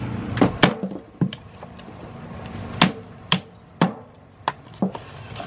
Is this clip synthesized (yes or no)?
no